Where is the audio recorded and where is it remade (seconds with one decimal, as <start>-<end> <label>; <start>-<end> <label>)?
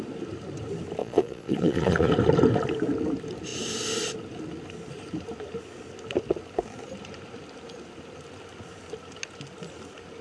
0.0-1.0 recorded; 1.0-2.1 remade; 2.1-10.2 recorded